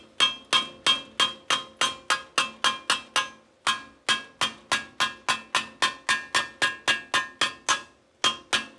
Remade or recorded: recorded